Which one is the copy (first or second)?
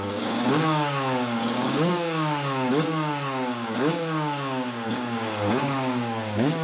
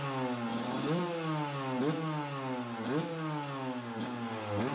first